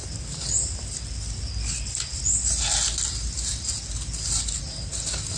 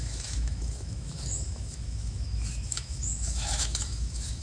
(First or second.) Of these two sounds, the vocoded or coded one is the second